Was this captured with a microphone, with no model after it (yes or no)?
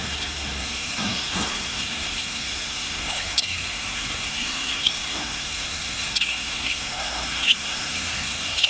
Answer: no